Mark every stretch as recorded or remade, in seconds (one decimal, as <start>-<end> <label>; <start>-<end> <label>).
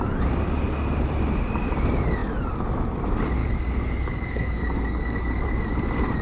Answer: 0.0-3.4 recorded; 3.4-5.6 remade; 5.6-6.2 recorded